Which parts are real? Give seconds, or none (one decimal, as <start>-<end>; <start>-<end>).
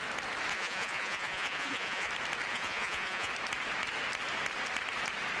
0.0-0.5; 2.1-2.5; 3.3-5.4